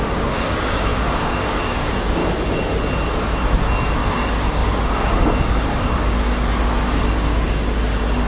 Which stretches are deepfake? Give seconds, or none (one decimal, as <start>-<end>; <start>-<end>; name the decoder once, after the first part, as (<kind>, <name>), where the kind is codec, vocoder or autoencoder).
0.0-2.2 (codec, DAC); 4.1-8.3